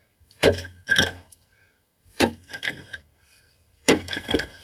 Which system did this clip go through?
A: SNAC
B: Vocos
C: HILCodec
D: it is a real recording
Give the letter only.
A